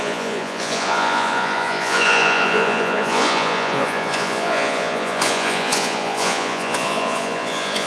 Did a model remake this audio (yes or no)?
yes